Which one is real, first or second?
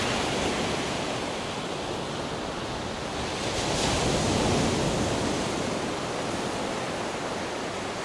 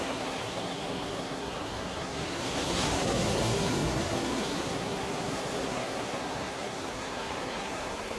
first